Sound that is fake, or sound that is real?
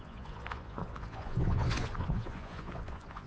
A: fake